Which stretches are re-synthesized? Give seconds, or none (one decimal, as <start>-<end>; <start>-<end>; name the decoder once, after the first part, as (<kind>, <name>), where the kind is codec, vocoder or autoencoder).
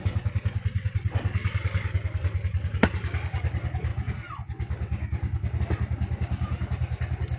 none